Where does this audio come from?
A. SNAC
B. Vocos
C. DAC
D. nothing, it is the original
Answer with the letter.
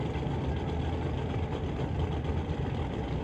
D